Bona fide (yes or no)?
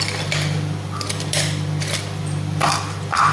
no